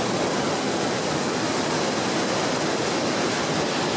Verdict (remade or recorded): recorded